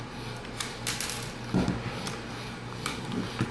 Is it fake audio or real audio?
real